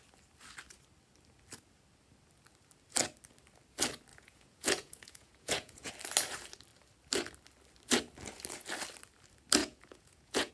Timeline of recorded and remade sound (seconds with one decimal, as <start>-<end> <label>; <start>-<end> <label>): 0.0-4.1 recorded; 4.1-5.9 remade; 5.9-9.6 recorded; 9.6-10.5 remade